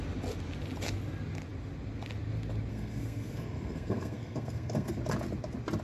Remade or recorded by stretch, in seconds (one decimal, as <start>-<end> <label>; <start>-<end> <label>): 0.0-2.7 recorded; 2.7-5.0 remade; 5.0-5.8 recorded